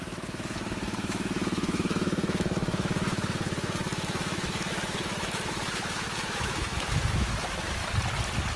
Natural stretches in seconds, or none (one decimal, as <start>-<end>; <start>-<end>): 7.8-8.6